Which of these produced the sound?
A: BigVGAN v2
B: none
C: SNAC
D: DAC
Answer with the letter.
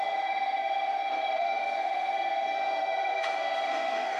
C